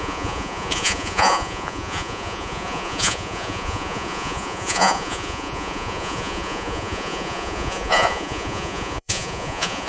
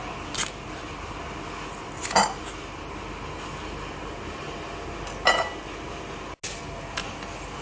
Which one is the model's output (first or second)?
first